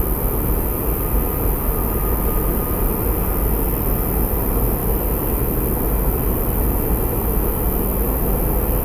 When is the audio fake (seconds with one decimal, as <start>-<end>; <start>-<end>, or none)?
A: none